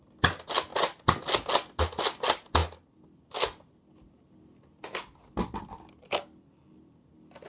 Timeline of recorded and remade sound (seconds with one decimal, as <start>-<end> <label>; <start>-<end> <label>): 0.0-7.5 recorded